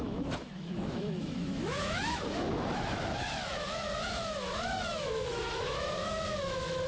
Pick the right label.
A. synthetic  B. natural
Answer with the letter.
A